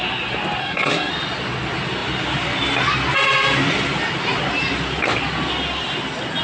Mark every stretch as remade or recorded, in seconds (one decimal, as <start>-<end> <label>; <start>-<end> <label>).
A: 0.0-0.6 recorded; 0.6-1.1 remade; 1.1-6.4 recorded